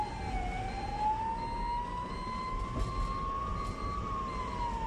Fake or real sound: real